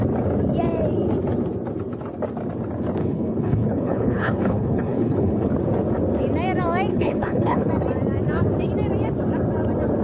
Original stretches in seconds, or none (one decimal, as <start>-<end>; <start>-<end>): 0.0-3.0; 5.5-6.9; 7.7-10.0